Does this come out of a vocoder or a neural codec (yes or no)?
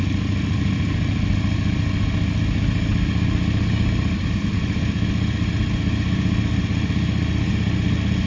no